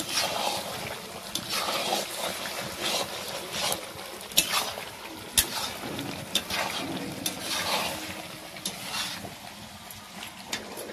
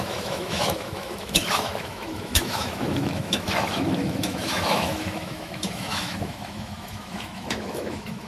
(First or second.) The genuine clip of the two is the first